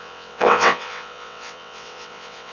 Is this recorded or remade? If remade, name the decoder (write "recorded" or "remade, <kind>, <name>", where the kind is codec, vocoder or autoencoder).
remade, vocoder, WaveNeXt